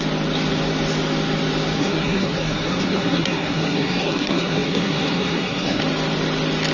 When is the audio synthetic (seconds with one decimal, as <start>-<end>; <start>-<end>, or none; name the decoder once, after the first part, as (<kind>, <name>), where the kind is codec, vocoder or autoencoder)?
1.8-5.8 (codec, SNAC)